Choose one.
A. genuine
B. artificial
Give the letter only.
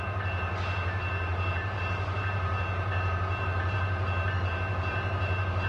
B